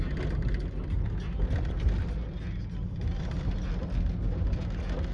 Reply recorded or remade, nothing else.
recorded